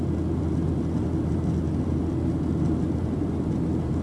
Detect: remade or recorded recorded